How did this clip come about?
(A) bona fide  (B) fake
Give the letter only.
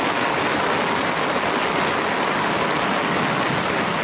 A